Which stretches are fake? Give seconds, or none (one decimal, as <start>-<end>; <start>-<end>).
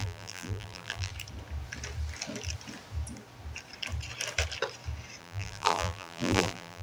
0.0-1.1; 5.2-6.8